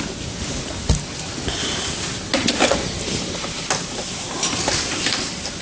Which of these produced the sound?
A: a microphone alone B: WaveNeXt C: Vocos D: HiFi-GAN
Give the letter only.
A